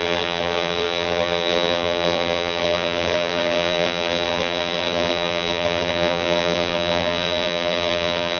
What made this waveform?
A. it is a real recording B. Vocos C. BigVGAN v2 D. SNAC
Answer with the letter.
C